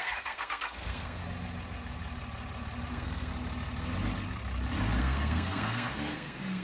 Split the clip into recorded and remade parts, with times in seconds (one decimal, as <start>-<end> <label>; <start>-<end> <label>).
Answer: 0.0-1.2 remade; 1.2-2.9 recorded; 2.9-3.3 remade; 3.3-5.0 recorded; 5.0-6.6 remade